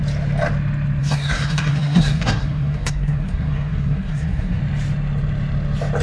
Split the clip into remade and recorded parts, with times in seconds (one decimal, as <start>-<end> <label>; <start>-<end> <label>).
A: 0.0-1.0 recorded; 1.0-4.6 remade; 4.6-6.0 recorded